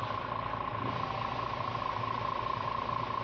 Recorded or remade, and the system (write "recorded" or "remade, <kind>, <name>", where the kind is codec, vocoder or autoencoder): recorded